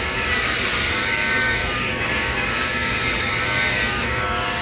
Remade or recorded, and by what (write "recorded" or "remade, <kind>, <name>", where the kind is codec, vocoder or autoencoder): remade, codec, DAC